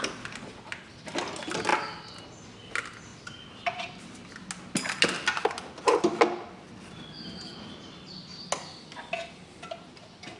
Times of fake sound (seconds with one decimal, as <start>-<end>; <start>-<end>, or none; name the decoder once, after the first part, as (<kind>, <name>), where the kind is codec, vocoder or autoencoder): none